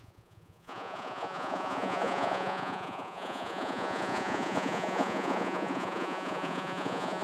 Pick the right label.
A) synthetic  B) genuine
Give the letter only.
A